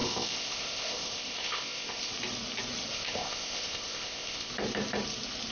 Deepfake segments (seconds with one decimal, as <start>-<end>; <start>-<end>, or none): 0.0-2.1; 2.9-4.5